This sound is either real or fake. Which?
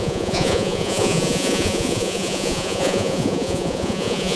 fake